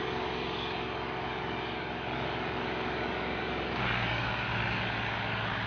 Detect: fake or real fake